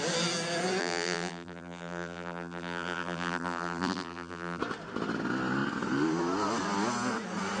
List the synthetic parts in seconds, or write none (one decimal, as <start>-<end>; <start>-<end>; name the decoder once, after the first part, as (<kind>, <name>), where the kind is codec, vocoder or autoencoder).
0.8-4.6 (vocoder, BigVGAN v2)